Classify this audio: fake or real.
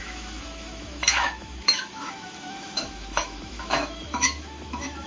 fake